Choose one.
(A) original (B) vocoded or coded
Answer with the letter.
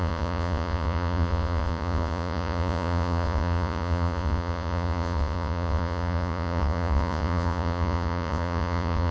B